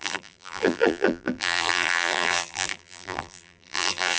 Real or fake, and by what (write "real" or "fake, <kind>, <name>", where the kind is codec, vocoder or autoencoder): fake, vocoder, BigVGAN v2